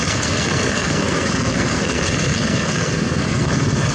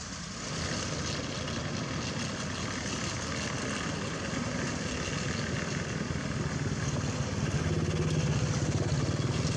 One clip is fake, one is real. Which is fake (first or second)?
first